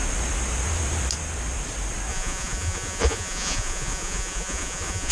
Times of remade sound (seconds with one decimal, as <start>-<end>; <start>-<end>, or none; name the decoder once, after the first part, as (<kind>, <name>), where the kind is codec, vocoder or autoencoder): 2.1-5.1 (vocoder, Vocos)